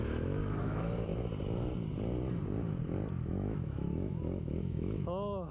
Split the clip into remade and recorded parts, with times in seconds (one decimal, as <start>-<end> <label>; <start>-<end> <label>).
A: 0.0-1.1 remade; 1.1-3.3 recorded; 3.3-5.5 remade